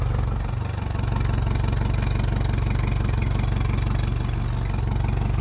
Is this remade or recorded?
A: recorded